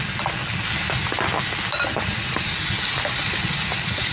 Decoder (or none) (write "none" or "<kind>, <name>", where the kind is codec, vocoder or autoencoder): none